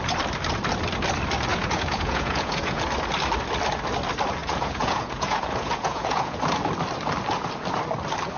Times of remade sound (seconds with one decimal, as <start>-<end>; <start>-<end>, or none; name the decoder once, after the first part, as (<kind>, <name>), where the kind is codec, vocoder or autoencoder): 1.5-2.8 (vocoder, Vocos); 4.4-6.4